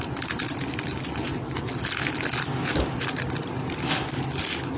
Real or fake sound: real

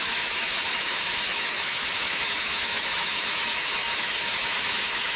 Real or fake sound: fake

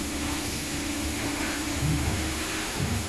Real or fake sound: fake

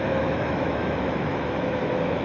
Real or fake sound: fake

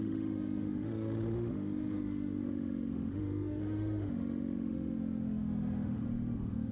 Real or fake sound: fake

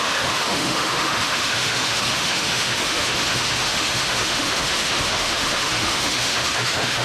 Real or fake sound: fake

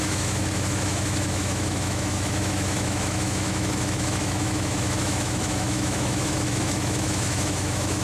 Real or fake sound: fake